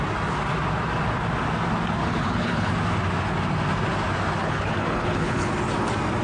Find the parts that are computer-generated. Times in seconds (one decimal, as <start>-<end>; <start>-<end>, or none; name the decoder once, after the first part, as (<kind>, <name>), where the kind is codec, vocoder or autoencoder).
2.0-2.7 (codec, HILCodec); 4.4-5.5